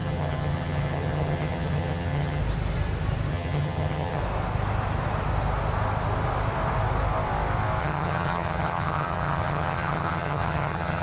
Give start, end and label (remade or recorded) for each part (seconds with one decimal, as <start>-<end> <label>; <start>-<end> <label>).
0.0-2.4 remade; 2.4-3.3 recorded; 3.3-4.2 remade; 4.2-7.8 recorded; 7.8-11.0 remade